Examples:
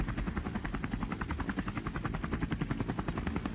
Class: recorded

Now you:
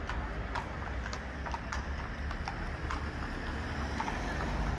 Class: recorded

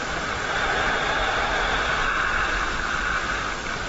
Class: recorded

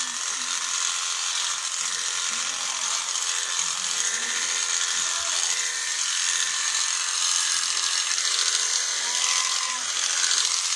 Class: remade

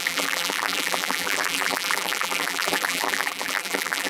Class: remade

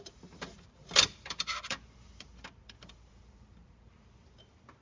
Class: remade